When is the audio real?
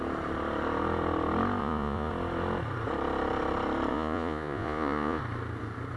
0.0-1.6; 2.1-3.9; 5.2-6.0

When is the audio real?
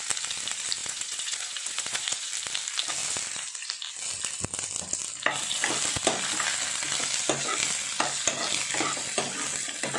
0.0-0.8; 2.3-10.0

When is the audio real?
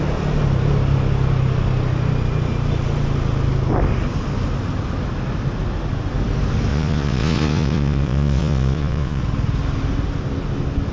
0.0-6.7; 9.2-10.9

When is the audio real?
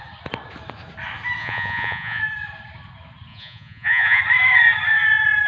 0.0-1.4; 2.2-3.3; 4.2-5.5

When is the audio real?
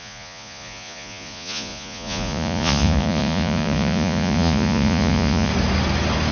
5.5-6.3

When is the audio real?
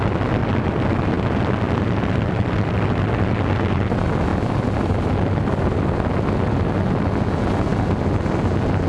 0.0-8.9